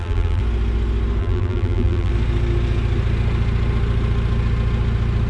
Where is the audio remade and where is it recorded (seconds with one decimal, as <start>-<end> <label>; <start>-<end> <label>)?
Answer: 0.0-0.4 remade; 0.4-1.2 recorded; 1.2-2.1 remade; 2.1-5.3 recorded

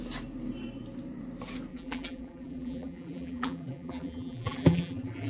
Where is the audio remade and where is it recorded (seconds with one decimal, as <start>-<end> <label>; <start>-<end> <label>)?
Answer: 0.0-1.7 recorded; 1.7-5.3 remade

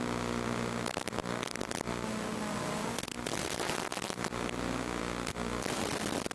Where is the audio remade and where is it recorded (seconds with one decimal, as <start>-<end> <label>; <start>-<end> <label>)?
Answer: 0.0-6.3 recorded

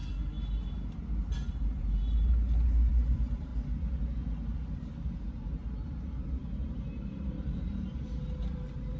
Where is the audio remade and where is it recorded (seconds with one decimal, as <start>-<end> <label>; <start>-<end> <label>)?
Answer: 0.0-1.5 recorded; 1.5-3.5 remade; 3.5-5.1 recorded; 5.1-6.4 remade; 6.4-7.4 recorded; 7.4-9.0 remade

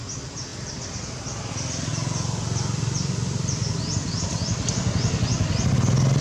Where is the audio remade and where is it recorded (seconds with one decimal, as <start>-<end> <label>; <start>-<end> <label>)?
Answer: 0.0-6.2 recorded

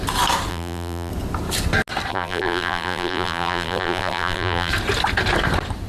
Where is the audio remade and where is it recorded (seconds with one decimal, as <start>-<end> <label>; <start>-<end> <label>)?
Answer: 0.0-0.5 recorded; 0.5-1.1 remade; 1.1-2.1 recorded; 2.1-4.7 remade; 4.7-5.9 recorded

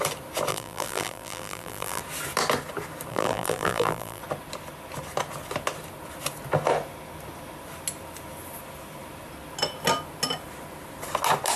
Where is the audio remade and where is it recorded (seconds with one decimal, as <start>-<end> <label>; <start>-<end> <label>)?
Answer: 0.0-0.5 recorded; 0.5-2.0 remade; 2.0-3.1 recorded; 3.1-4.2 remade; 4.2-11.6 recorded

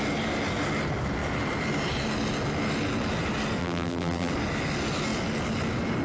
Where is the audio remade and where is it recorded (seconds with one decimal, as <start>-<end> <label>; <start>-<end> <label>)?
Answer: 0.0-3.6 recorded; 3.6-4.3 remade; 4.3-6.0 recorded